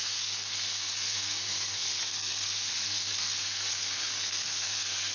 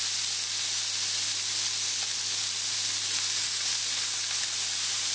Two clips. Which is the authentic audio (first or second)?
second